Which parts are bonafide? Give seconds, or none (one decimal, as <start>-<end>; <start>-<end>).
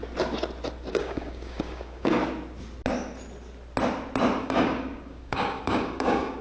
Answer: 0.0-0.9; 2.2-4.4